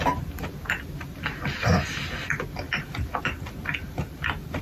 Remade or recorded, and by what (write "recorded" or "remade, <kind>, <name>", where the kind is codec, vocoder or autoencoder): recorded